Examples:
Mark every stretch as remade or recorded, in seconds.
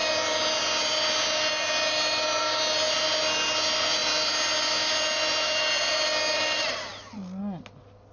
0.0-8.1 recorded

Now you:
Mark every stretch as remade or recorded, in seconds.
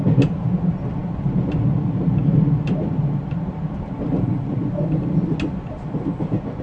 0.0-1.0 recorded; 1.0-4.7 remade; 4.7-6.6 recorded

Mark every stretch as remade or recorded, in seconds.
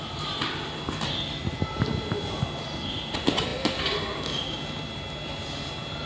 0.0-6.1 recorded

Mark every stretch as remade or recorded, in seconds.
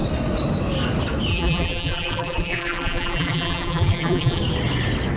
0.0-1.3 recorded; 1.3-4.4 remade; 4.4-5.2 recorded